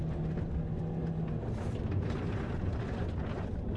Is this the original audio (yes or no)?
yes